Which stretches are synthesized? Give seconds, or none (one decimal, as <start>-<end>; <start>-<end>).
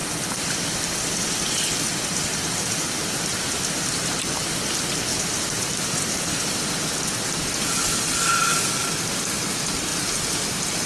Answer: 0.0-0.8; 2.3-3.2; 5.1-6.8